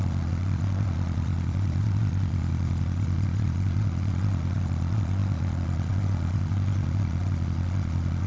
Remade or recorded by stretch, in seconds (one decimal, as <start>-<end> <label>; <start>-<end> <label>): 0.0-8.3 remade